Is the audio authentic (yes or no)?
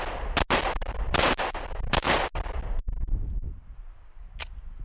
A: yes